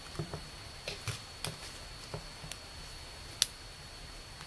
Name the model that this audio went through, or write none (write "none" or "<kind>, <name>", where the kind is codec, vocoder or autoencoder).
none